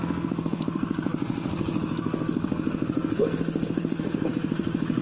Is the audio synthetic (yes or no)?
yes